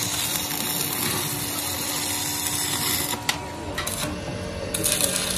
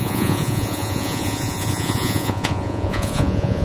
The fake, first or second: second